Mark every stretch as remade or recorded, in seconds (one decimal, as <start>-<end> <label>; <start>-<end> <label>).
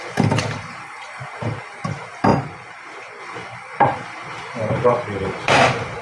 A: 0.0-6.0 remade